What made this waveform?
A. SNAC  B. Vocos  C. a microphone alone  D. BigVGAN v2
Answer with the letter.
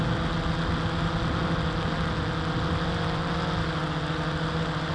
C